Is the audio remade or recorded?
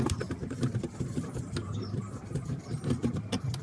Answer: remade